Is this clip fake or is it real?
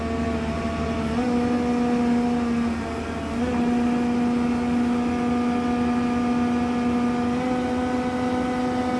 real